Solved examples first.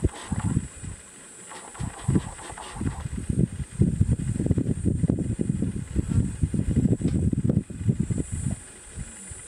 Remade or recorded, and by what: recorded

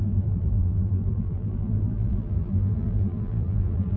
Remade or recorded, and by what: remade, vocoder, BigVGAN v2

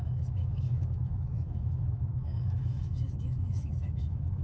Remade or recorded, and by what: remade, autoencoder, DAC-VAE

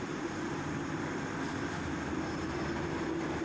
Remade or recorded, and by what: remade, vocoder, BigVGAN v2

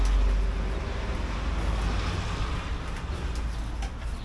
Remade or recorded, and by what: recorded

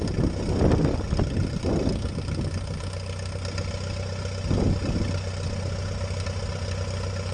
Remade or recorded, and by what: recorded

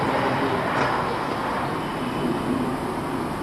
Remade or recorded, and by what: recorded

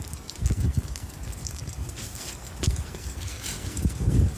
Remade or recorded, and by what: remade, codec, SNAC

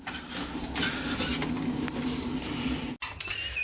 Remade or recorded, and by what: recorded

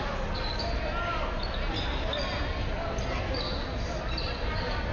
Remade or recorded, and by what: recorded